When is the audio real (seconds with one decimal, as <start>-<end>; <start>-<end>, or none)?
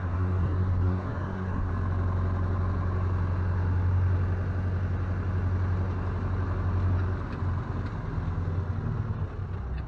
1.7-9.9